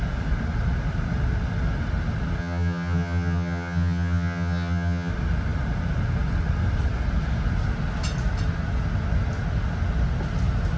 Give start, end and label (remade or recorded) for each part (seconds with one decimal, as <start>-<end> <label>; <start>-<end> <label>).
0.0-2.4 recorded; 2.4-5.1 remade; 5.1-10.8 recorded